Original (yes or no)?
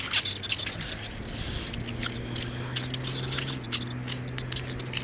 yes